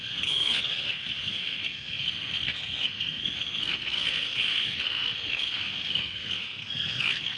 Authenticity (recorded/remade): remade